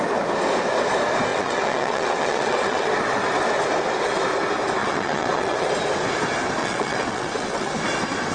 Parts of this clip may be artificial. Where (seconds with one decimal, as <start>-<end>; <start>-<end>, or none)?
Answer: 1.3-2.9; 4.8-5.7; 6.6-7.7